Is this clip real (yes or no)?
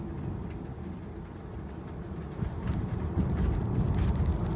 yes